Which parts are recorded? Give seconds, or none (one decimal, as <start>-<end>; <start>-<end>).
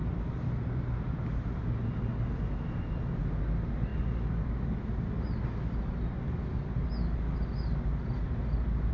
0.0-8.9